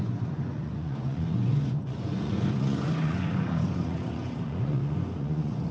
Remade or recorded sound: remade